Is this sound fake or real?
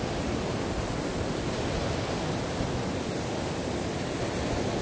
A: real